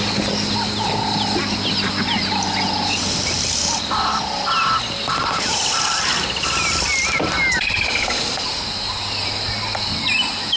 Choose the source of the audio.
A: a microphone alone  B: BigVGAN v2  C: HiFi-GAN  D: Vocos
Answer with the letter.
A